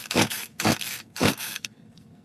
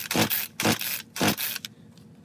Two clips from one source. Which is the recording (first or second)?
second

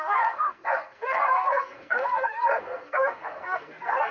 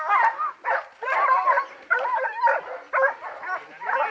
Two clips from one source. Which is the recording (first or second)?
second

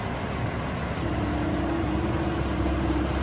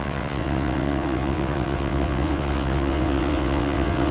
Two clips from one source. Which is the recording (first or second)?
first